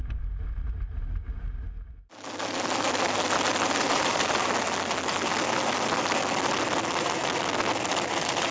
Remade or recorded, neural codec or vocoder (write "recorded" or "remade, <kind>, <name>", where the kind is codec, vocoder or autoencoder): recorded